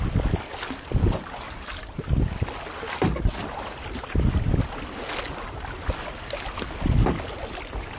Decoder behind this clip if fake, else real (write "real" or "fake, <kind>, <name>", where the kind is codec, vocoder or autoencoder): real